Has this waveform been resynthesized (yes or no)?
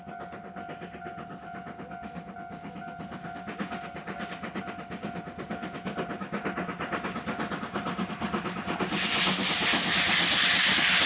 no